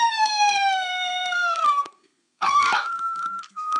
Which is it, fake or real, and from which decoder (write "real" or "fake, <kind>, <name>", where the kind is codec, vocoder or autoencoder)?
fake, codec, SNAC